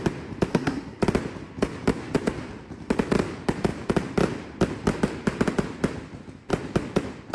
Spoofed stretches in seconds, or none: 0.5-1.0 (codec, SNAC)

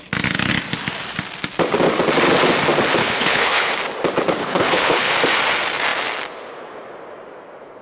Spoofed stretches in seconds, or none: 3.0-3.7 (codec, HILCodec); 4.4-5.1

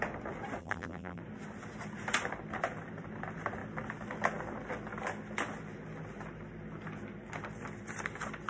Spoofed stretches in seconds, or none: 0.6-1.2 (vocoder, BigVGAN v2)